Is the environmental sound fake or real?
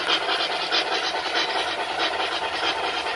real